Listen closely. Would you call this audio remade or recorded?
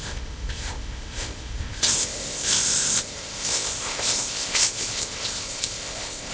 remade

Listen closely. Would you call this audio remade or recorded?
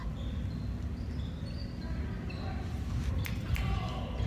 recorded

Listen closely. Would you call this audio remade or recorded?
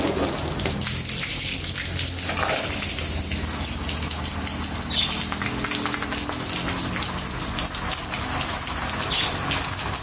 recorded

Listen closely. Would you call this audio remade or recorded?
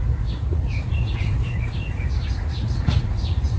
remade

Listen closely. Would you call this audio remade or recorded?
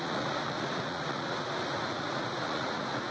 remade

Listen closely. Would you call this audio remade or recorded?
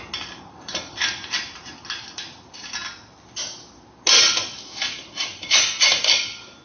recorded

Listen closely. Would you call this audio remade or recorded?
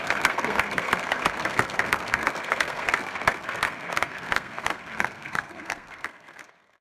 remade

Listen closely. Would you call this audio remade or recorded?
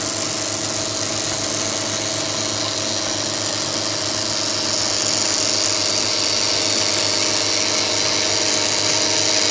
recorded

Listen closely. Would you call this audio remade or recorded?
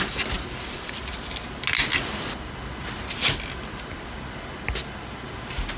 recorded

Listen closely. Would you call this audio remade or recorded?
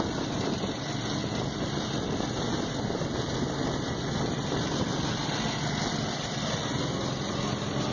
recorded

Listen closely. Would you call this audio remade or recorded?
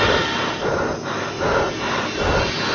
recorded